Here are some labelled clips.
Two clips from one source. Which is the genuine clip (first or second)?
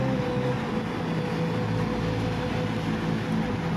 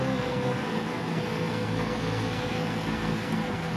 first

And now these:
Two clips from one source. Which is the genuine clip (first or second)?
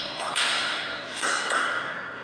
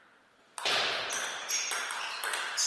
second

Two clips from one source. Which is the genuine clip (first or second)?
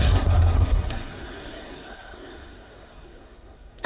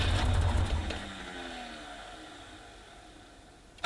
second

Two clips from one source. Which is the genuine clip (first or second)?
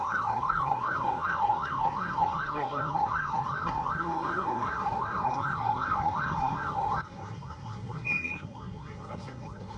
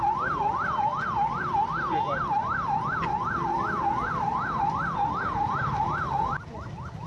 second